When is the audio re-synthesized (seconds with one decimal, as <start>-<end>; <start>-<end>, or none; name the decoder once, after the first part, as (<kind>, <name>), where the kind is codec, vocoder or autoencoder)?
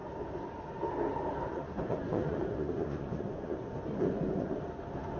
1.5-4.6 (vocoder, Vocos)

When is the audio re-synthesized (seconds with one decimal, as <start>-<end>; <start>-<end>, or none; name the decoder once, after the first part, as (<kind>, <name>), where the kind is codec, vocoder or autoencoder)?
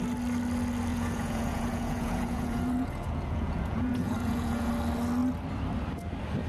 0.9-4.7 (vocoder, Vocos)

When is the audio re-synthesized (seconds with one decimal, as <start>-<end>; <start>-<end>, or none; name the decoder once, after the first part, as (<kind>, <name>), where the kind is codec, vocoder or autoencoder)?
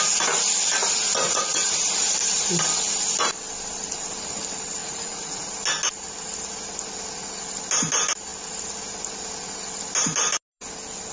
1.2-1.8 (vocoder, Vocos); 4.8-5.5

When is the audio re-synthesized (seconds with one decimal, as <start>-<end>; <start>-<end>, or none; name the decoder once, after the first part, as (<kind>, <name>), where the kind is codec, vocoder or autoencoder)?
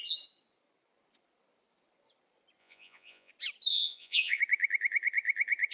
2.6-3.3 (vocoder, Vocos); 3.7-4.4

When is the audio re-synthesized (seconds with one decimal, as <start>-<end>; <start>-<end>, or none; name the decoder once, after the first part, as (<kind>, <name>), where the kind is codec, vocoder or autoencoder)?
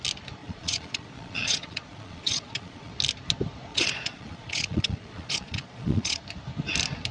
0.4-2.9 (vocoder, Vocos); 3.7-6.2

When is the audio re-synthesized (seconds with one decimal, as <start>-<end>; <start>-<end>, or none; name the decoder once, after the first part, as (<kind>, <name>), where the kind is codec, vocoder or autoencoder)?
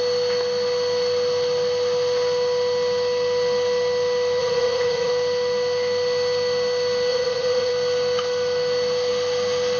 4.4-5.1 (vocoder, Vocos); 7.1-7.7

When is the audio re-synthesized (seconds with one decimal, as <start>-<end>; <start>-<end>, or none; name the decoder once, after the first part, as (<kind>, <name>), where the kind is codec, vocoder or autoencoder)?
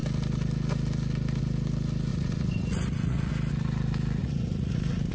2.1-3.3 (vocoder, Vocos); 4.2-5.1